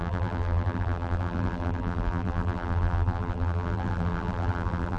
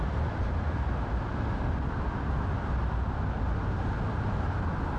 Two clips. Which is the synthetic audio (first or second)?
first